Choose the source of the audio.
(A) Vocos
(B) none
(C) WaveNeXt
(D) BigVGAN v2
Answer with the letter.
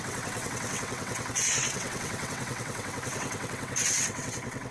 C